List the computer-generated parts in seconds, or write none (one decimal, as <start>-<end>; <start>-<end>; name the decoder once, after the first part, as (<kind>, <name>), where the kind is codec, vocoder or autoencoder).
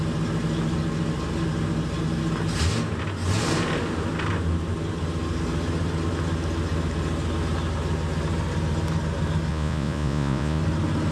9.5-10.6 (vocoder, Vocos)